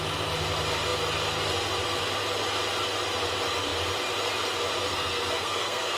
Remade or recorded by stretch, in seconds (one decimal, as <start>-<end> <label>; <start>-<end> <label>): 0.0-4.9 recorded; 4.9-6.0 remade